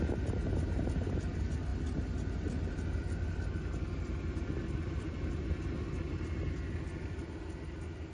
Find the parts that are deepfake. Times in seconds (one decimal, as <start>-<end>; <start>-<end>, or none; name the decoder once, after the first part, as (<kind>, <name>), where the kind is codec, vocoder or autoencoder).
none